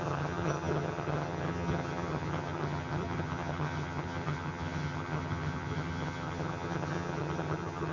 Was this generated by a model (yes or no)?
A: yes